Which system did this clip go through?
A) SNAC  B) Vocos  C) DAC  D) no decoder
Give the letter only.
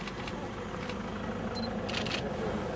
D